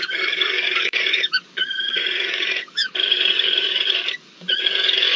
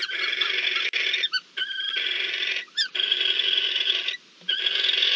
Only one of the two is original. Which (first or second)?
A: second